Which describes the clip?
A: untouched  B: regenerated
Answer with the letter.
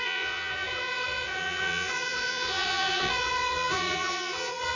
B